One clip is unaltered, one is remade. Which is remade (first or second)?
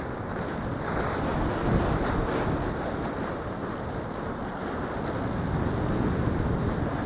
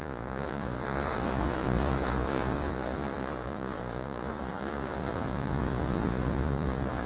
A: second